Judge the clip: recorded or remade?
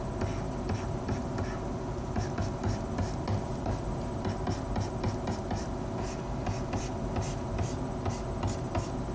recorded